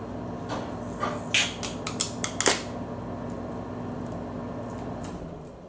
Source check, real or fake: real